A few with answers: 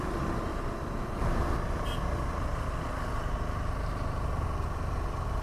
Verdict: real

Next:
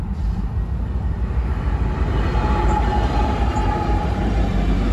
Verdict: fake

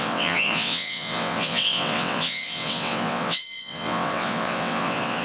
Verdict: fake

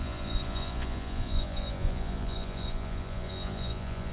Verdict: fake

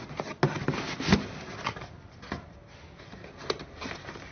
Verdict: real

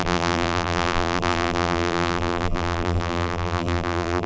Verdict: fake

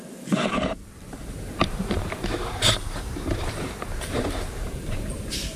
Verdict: fake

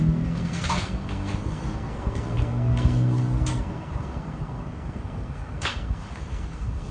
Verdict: fake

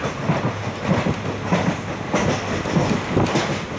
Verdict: real